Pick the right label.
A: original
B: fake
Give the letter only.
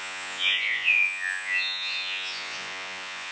B